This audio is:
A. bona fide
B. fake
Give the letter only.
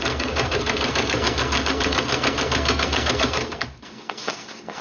B